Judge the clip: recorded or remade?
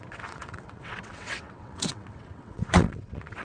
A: remade